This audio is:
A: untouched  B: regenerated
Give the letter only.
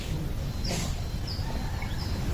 A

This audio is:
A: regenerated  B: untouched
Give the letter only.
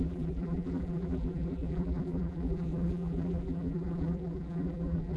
A